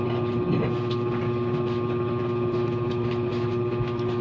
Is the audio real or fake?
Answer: real